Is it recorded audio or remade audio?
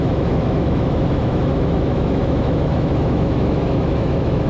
remade